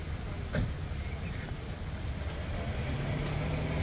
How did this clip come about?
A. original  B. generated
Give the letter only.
A